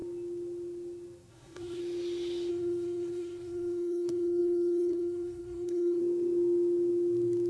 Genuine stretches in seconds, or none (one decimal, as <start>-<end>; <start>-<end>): 0.0-1.3; 1.8-2.5; 6.0-7.5

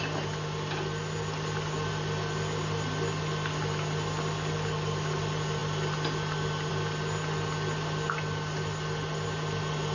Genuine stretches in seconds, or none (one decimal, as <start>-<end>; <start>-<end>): 0.0-9.9